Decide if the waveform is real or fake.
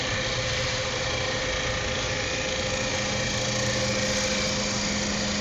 real